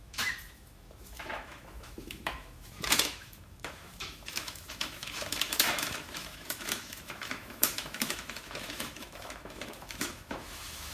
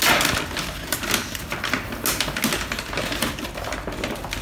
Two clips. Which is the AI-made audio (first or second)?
first